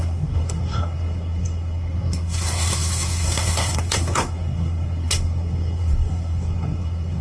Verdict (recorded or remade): remade